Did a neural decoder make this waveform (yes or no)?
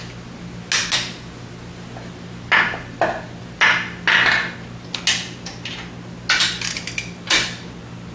no